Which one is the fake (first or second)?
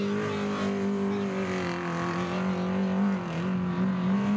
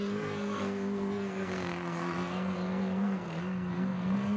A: second